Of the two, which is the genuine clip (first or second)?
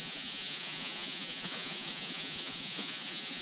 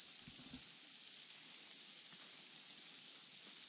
second